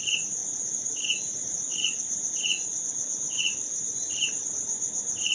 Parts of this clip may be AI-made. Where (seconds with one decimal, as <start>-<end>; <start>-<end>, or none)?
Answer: 0.4-2.3